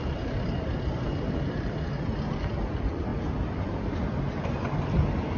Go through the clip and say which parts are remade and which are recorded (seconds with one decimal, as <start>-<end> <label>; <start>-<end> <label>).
0.0-0.7 remade; 0.7-2.3 recorded; 2.3-5.4 remade